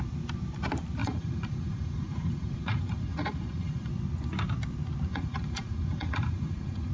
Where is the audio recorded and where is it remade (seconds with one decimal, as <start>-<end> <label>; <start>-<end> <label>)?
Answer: 0.0-1.0 recorded; 1.0-3.9 remade; 3.9-5.1 recorded; 5.1-6.9 remade